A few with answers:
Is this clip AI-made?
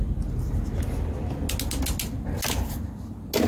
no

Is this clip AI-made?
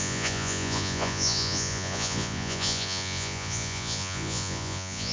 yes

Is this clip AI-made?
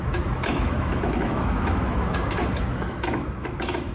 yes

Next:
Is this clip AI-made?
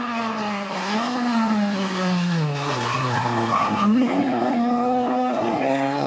yes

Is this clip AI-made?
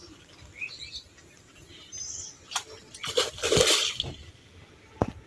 no